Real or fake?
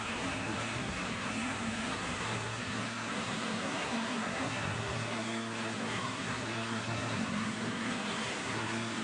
fake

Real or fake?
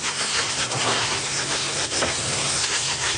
fake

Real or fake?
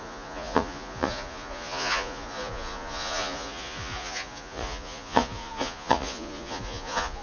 fake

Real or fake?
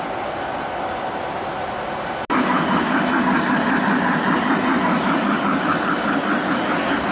real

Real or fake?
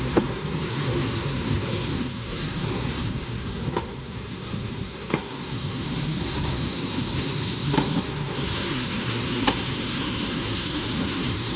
fake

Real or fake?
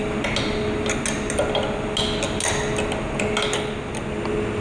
real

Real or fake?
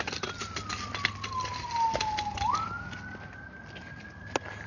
real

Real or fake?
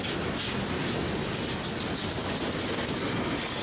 real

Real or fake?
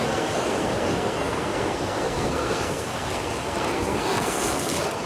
fake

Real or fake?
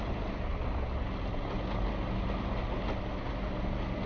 real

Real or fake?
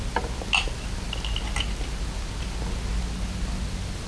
real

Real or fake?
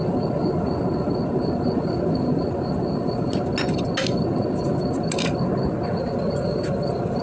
real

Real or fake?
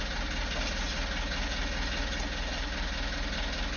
real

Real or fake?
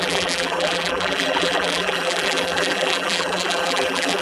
fake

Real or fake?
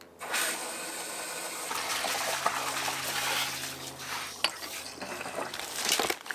real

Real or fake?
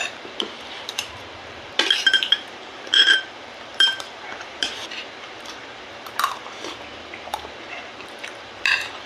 fake